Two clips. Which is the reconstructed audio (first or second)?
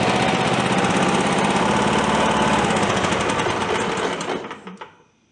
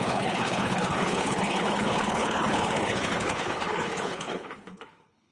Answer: second